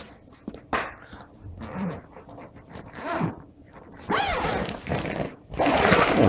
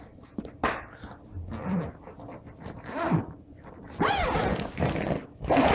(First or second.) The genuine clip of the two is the second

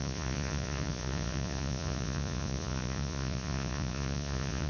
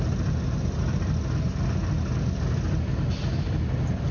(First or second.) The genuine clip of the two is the second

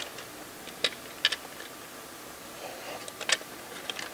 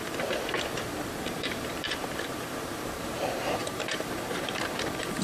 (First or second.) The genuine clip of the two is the first